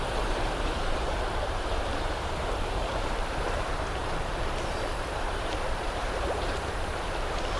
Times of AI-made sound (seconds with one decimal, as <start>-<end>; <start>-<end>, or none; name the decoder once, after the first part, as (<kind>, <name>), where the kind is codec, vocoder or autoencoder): 0.0-4.0 (vocoder, BigVGAN v2); 4.9-7.6